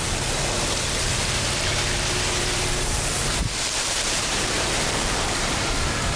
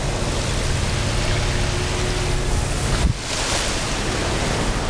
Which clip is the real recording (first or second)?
second